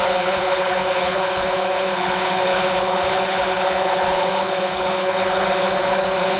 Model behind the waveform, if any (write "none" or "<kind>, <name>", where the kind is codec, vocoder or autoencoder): codec, HILCodec